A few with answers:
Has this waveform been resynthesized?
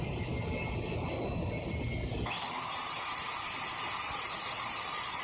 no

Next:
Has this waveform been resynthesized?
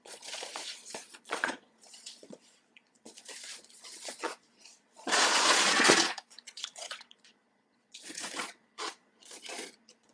yes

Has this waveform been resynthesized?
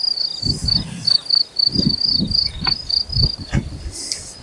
no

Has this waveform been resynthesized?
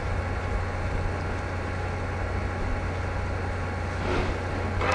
no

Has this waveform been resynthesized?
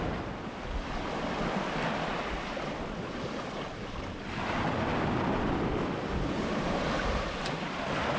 no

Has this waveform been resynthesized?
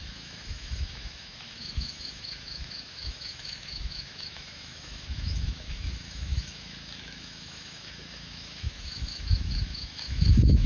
yes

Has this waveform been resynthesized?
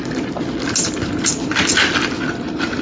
no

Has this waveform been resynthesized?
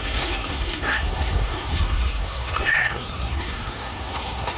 yes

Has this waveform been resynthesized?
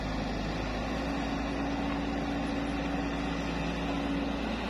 no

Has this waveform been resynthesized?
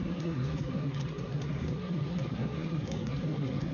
yes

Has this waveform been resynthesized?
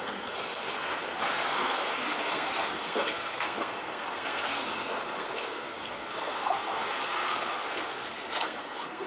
yes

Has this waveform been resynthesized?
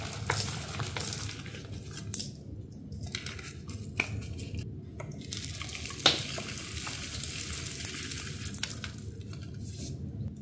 no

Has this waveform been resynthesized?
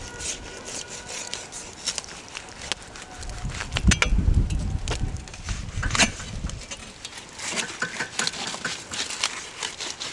no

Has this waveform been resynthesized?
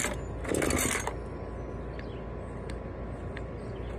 no